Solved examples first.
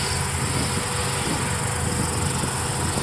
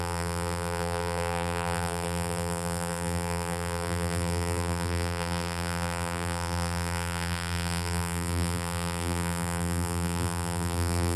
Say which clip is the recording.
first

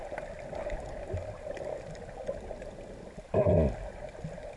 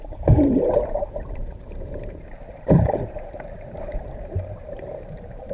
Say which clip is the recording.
first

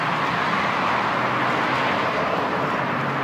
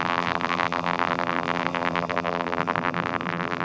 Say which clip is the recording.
first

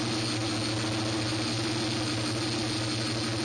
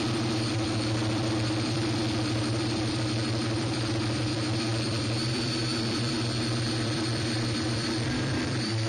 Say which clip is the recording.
first